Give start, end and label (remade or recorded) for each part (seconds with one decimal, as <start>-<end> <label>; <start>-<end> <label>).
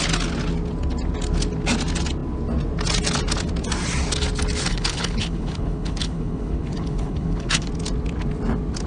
0.0-4.7 recorded; 4.7-7.7 remade; 7.7-8.9 recorded